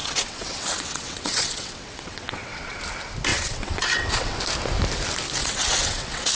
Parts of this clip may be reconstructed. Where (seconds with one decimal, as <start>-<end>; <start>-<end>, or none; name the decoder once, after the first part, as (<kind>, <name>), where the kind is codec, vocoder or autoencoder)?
0.0-2.8 (vocoder, WaveNeXt); 3.3-4.4; 5.4-6.3